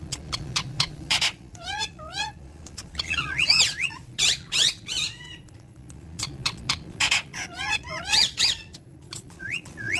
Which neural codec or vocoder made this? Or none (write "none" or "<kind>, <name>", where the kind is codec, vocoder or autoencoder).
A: vocoder, Vocos